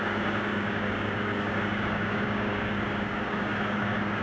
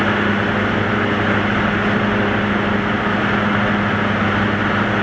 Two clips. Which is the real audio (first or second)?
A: second